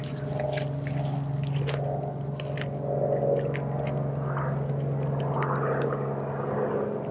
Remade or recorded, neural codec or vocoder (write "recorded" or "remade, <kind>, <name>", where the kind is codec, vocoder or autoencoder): recorded